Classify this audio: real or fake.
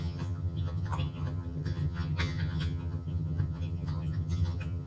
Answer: fake